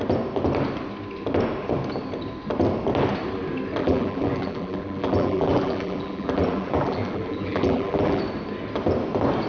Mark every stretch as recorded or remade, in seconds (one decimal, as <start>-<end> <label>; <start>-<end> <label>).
0.0-3.8 recorded; 3.8-8.2 remade; 8.2-9.5 recorded